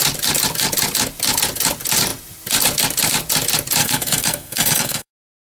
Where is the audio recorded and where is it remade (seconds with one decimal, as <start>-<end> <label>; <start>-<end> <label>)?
0.0-3.8 recorded; 3.8-5.1 remade; 5.1-5.6 recorded